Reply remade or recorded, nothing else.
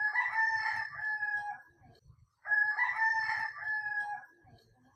recorded